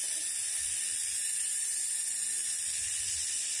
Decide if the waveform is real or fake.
real